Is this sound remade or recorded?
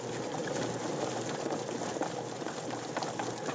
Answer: recorded